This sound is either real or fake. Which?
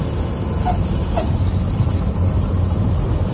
real